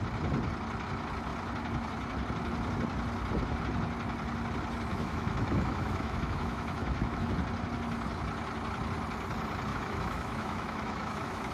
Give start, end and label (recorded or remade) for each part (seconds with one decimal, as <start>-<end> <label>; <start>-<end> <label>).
0.0-4.9 recorded; 4.9-7.3 remade; 7.3-9.7 recorded; 9.7-11.5 remade